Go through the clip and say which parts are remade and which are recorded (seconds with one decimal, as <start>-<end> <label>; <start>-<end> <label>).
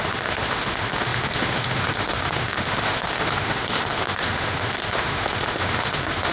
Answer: 0.0-6.3 remade